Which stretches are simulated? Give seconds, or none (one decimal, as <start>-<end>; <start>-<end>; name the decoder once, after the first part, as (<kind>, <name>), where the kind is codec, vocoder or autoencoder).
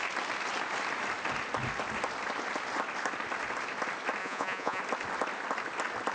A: 4.2-4.8 (vocoder, Vocos)